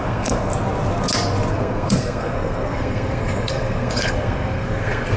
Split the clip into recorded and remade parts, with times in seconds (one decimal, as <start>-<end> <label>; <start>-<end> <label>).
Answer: 0.0-0.5 remade; 0.5-1.5 recorded; 1.5-5.2 remade